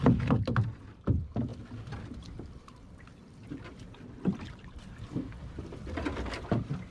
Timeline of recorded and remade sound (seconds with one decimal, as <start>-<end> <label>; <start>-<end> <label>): 0.0-6.9 recorded